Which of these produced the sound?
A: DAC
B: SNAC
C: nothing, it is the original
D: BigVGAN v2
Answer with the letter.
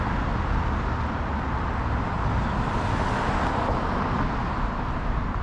C